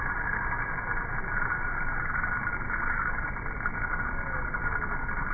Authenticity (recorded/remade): recorded